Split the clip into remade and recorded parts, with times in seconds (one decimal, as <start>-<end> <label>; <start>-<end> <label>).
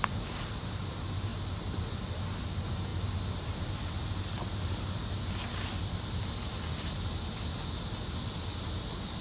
0.0-2.9 recorded; 2.9-3.7 remade; 3.7-9.2 recorded